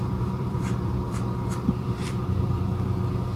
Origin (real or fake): fake